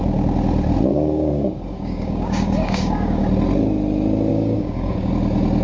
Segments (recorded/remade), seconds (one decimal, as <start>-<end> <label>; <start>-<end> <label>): 0.0-0.9 recorded; 0.9-3.2 remade; 3.2-4.3 recorded; 4.3-5.1 remade; 5.1-5.6 recorded